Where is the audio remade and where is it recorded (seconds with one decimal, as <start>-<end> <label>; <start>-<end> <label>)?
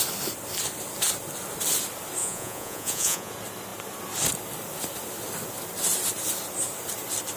0.0-2.2 recorded; 2.2-3.3 remade; 3.3-7.4 recorded